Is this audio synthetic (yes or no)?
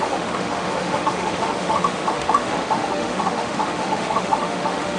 yes